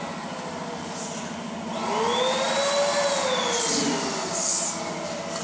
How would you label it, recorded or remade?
recorded